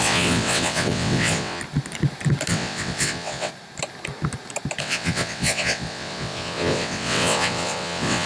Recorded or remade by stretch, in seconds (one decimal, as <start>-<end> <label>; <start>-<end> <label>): 0.0-1.6 remade; 1.6-2.5 recorded; 2.5-3.5 remade; 3.5-4.8 recorded; 4.8-8.3 remade